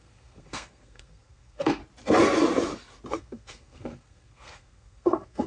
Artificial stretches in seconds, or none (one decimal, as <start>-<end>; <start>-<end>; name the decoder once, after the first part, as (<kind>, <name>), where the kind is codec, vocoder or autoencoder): 0.0-1.8 (codec, SNAC); 3.1-5.5